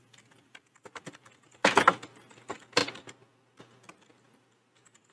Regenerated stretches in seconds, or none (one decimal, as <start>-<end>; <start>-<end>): none